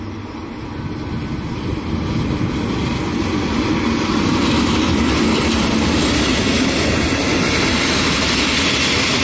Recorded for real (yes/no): yes